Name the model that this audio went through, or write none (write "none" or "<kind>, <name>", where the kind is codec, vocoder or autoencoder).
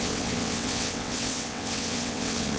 vocoder, WaveNeXt